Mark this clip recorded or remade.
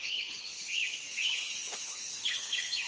remade